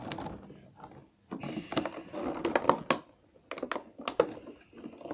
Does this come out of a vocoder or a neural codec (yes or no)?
no